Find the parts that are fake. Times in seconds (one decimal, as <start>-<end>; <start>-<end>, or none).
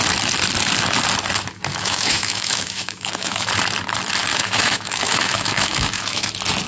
1.7-3.5; 4.3-6.3